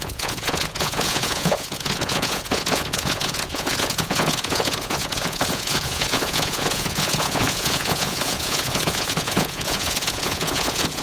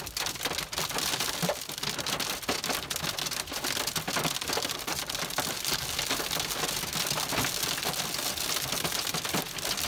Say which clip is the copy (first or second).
first